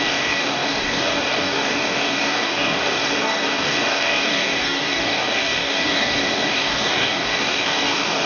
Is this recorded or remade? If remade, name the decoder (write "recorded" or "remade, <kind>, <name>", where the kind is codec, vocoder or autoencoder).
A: remade, codec, DAC